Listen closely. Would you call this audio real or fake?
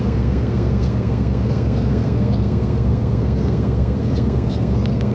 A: fake